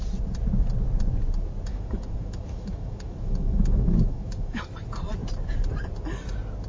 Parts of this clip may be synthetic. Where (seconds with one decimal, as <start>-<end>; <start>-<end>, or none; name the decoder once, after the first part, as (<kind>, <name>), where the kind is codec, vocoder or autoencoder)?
1.7-4.6 (autoencoder, DAC-VAE)